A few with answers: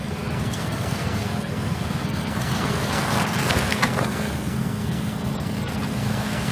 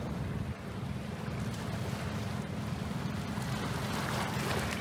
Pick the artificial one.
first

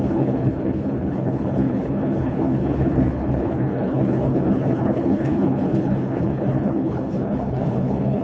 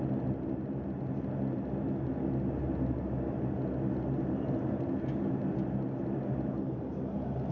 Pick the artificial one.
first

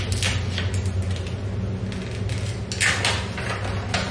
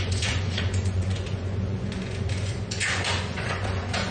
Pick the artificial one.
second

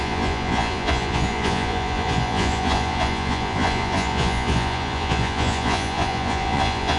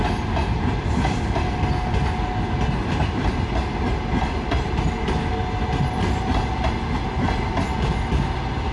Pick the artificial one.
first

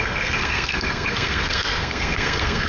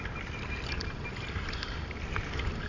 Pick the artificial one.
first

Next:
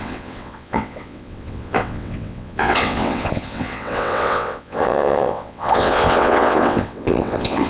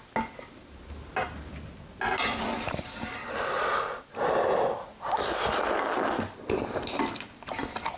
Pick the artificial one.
first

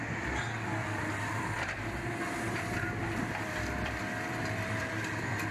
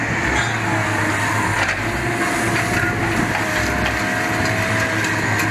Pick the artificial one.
first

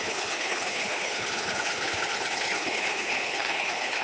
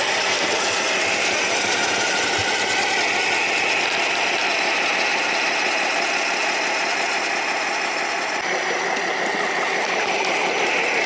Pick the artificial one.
first